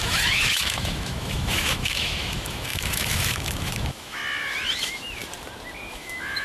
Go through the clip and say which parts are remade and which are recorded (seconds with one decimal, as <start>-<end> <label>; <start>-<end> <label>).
0.0-4.2 remade; 4.2-4.8 recorded; 4.8-5.2 remade; 5.2-5.9 recorded; 5.9-6.4 remade